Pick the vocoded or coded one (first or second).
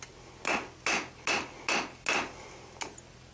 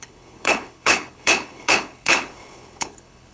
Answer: second